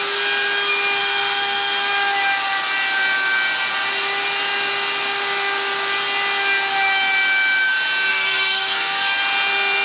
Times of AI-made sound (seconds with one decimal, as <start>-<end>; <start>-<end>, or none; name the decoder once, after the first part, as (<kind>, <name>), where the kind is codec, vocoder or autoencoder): 1.0-1.9 (codec, SNAC); 8.1-9.2